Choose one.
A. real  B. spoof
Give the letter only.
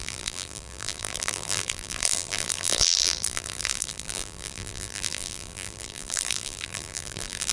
B